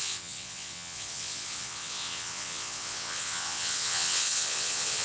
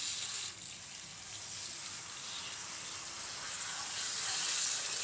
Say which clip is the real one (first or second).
second